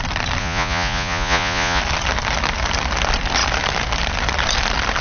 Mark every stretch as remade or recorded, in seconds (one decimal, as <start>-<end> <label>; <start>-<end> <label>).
0.0-0.4 recorded; 0.4-1.8 remade; 1.8-5.0 recorded